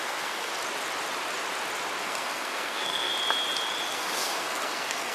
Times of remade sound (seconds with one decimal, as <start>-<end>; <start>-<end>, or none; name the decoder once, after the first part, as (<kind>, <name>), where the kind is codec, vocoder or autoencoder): 0.0-0.5 (codec, SNAC); 2.0-3.1; 3.9-5.1